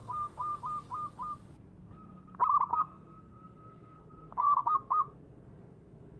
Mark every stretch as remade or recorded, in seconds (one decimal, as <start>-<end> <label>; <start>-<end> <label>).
0.0-0.6 remade; 0.6-2.7 recorded; 2.7-6.2 remade